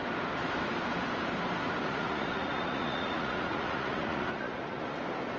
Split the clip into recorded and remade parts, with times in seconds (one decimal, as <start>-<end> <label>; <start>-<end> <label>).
0.0-1.8 recorded; 1.8-5.0 remade; 5.0-5.4 recorded

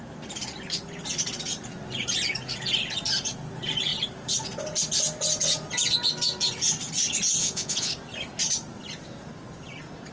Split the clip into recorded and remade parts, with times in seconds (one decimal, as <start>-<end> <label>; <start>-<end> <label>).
0.0-7.4 recorded; 7.4-7.9 remade; 7.9-10.1 recorded

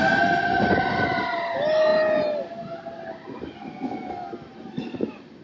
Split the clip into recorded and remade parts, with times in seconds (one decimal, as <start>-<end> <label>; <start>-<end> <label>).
0.0-5.4 recorded

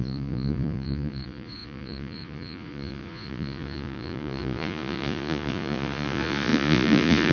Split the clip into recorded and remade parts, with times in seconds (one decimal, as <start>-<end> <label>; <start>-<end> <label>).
0.0-7.3 remade

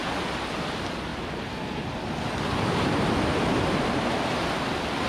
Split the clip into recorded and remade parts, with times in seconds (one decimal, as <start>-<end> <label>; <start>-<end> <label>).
0.0-5.1 recorded

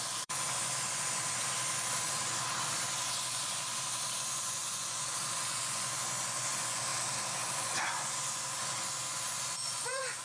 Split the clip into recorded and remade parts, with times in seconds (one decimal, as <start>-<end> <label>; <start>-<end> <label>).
0.0-6.9 remade; 6.9-7.5 recorded; 7.5-10.2 remade